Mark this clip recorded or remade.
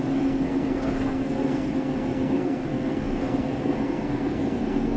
remade